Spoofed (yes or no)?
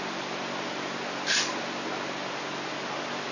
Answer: no